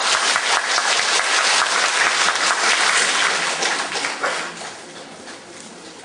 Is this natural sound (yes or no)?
yes